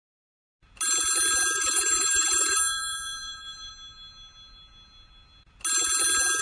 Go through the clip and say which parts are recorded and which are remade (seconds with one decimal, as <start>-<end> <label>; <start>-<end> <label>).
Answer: 0.0-1.6 recorded; 1.6-3.7 remade; 3.7-6.4 recorded

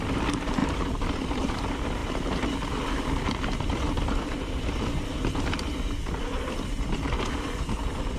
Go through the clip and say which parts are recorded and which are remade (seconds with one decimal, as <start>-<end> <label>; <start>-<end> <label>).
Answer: 0.0-0.6 recorded; 0.6-1.6 remade; 1.6-8.2 recorded